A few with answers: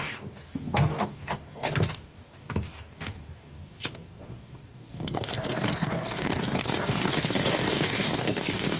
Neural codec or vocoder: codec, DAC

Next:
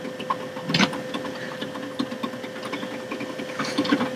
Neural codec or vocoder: none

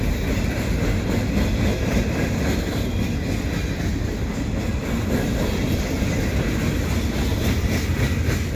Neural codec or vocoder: none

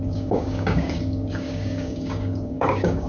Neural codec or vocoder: codec, DAC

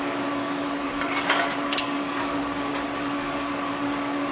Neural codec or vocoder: codec, DAC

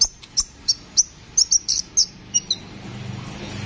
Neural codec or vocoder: none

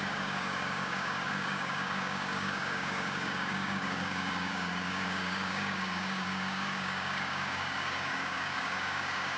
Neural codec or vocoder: codec, DAC